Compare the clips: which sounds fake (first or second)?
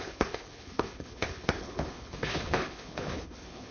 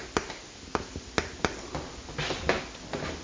first